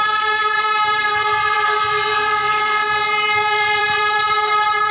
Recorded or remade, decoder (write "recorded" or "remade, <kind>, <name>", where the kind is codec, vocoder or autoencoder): remade, vocoder, BigVGAN v2